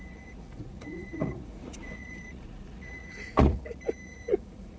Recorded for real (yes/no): no